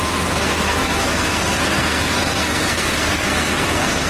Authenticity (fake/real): fake